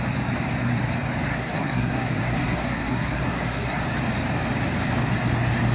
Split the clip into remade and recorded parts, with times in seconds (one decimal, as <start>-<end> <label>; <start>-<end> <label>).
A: 0.0-1.3 recorded; 1.3-3.8 remade; 3.8-5.7 recorded